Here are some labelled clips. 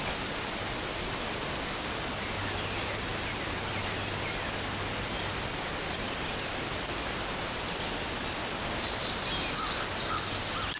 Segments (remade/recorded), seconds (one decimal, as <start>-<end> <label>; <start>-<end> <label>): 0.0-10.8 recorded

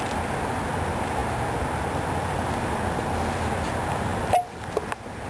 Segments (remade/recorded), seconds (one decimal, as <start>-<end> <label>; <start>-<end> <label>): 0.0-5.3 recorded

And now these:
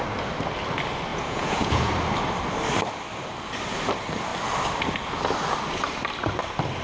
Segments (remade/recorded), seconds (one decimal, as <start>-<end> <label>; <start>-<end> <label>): 0.0-1.1 recorded; 1.1-1.9 remade; 1.9-6.8 recorded

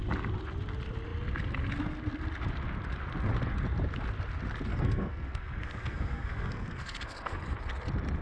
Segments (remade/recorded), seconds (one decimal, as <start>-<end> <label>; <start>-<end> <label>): 0.0-4.7 recorded; 4.7-7.4 remade; 7.4-8.2 recorded